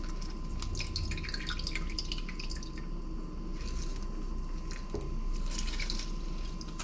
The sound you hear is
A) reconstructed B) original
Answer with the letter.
B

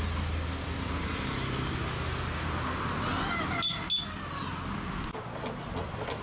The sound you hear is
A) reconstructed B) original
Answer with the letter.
B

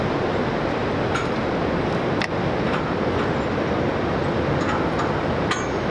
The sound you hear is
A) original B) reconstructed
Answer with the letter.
A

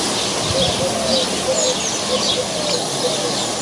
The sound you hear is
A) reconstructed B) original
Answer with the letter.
B